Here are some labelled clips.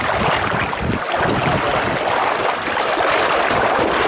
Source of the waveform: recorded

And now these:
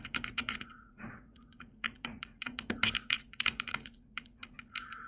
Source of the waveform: remade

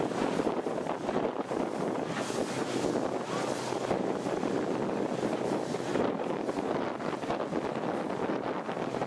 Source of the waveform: recorded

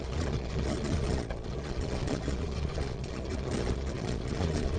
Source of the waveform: remade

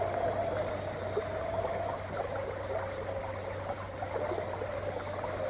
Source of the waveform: recorded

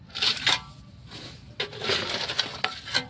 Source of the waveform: recorded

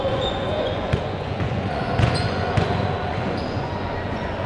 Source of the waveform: remade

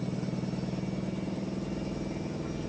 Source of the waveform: recorded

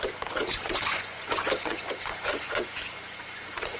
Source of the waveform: remade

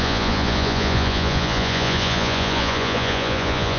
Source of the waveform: remade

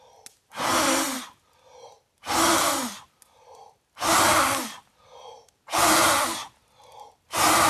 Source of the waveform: recorded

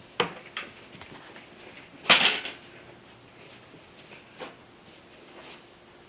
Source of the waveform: recorded